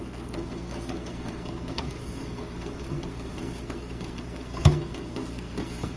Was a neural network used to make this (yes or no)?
yes